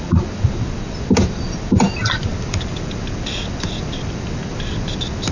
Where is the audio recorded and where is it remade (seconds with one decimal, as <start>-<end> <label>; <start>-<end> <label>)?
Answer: 0.0-5.3 recorded